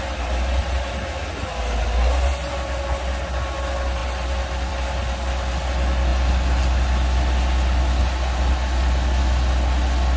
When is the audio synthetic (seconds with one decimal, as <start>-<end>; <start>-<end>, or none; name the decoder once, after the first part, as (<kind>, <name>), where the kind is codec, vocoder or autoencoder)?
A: none